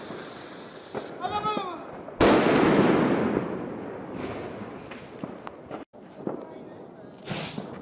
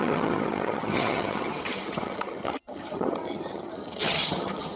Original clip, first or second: first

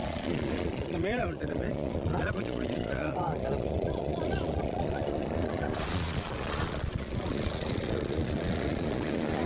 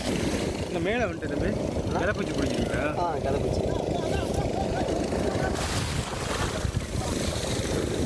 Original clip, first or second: second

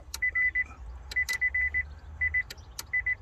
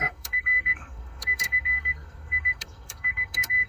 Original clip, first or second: first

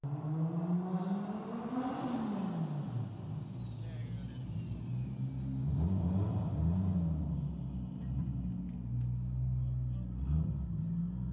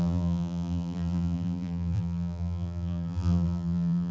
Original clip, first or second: first